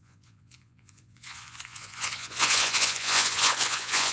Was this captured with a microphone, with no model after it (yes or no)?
no